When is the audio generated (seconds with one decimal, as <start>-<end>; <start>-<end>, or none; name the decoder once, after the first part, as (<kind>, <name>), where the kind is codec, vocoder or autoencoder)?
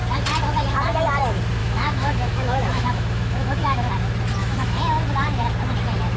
1.6-3.9 (autoencoder, DAC-VAE); 4.4-5.0